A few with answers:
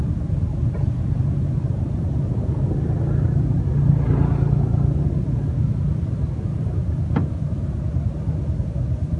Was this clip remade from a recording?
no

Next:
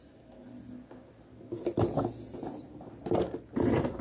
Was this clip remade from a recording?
no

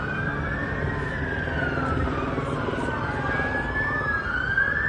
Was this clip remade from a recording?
no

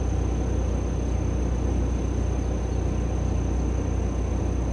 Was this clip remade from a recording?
no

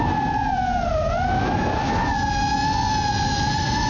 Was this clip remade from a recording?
no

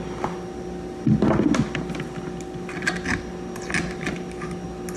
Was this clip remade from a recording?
no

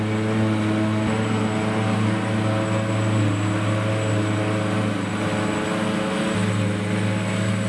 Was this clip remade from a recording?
no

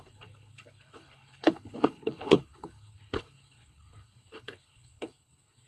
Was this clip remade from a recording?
yes